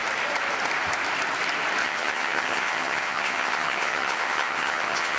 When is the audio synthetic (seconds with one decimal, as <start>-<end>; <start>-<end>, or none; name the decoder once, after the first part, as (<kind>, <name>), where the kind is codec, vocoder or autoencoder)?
1.8-5.2 (vocoder, HiFi-GAN)